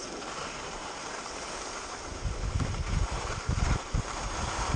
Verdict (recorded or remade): recorded